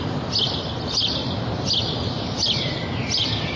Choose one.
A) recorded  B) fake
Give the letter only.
A